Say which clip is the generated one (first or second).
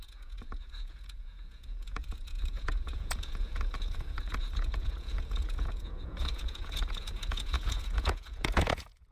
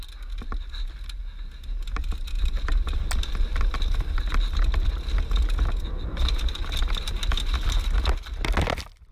first